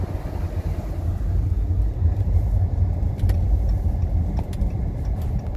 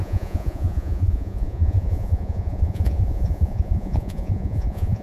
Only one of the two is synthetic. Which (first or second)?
second